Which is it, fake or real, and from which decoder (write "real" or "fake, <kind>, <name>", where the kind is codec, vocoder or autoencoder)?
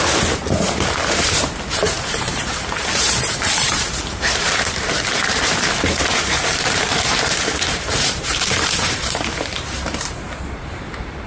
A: fake, vocoder, BigVGAN v2